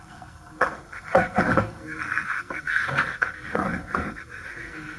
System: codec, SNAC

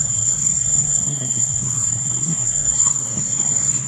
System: codec, SNAC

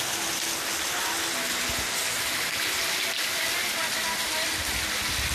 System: none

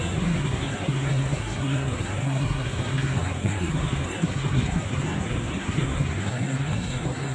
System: codec, SNAC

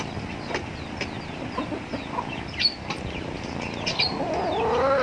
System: none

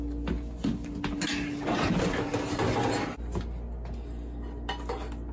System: none